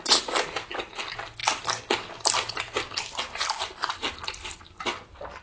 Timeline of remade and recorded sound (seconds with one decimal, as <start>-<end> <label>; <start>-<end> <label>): 0.0-5.4 recorded